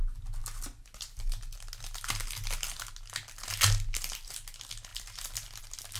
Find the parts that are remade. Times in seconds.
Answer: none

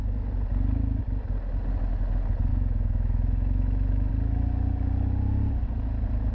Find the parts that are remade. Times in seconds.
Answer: 2.5-4.1

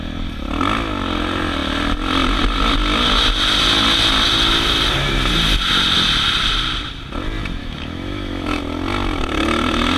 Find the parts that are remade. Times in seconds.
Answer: 7.6-8.6

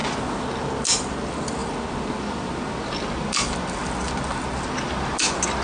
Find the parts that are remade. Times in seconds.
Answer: none

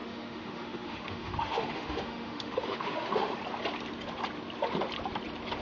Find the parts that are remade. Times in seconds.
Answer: 0.0-3.4

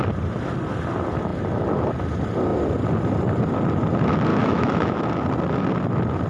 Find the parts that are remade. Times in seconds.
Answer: 4.3-5.0